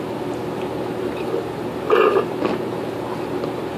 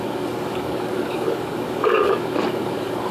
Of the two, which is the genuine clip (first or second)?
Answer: first